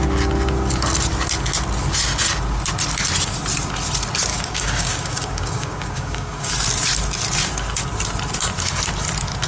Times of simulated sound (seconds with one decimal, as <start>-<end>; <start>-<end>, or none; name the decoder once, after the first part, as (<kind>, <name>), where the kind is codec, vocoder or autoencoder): 4.3-6.5 (codec, DAC)